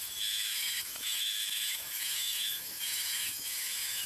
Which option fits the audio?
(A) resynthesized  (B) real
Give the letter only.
A